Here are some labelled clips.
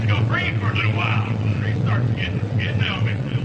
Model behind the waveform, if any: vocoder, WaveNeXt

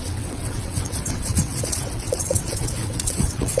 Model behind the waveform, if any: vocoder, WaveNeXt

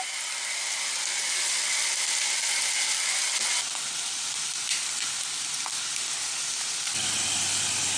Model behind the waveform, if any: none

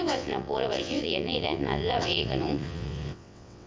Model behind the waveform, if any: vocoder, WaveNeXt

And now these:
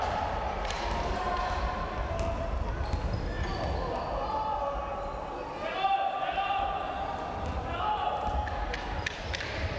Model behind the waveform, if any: none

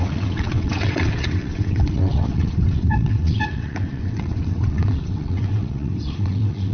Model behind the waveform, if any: vocoder, WaveNeXt